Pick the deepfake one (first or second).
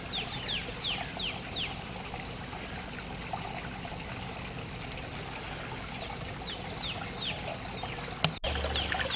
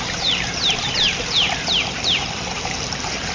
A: second